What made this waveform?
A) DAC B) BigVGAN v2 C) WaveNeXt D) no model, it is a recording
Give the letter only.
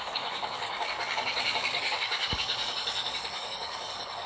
A